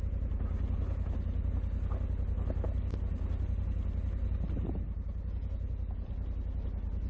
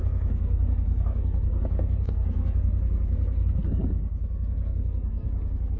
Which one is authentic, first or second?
first